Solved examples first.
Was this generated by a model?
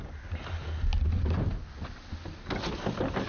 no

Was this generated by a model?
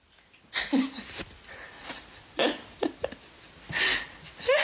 no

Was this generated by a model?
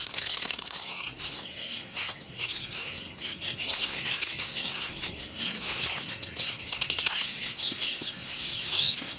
yes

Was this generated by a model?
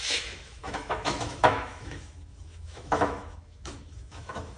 yes